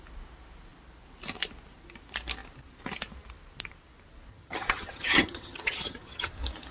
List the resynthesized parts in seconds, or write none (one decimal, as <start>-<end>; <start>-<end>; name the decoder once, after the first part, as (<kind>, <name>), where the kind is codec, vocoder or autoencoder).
4.3-6.3 (vocoder, HiFi-GAN)